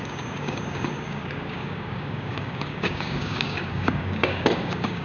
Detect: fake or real fake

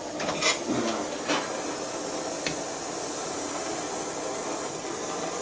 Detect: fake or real real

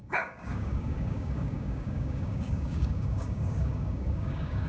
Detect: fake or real fake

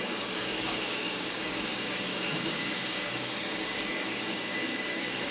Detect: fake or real fake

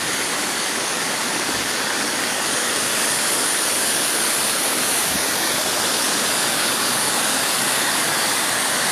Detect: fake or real fake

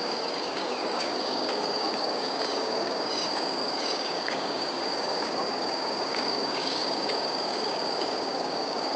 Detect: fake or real fake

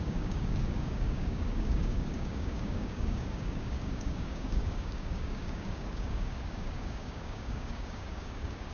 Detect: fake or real fake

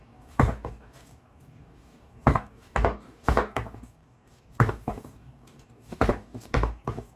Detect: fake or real fake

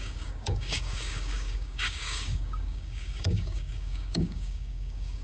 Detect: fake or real fake